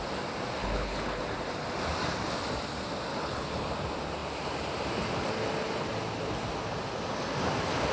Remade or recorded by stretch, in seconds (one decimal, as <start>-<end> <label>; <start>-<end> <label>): 0.0-0.6 recorded; 0.6-1.2 remade; 1.2-3.1 recorded; 3.1-3.7 remade; 3.7-7.9 recorded